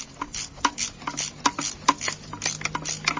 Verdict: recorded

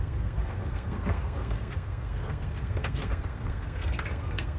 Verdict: remade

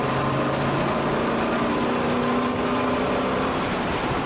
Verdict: recorded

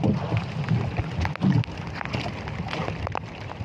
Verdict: recorded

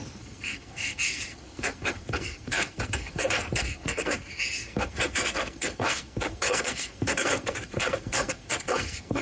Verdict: remade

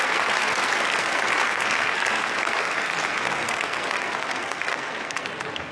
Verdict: remade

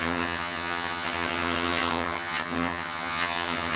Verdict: remade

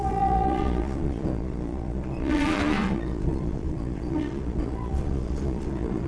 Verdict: remade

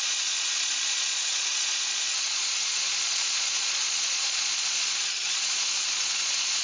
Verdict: remade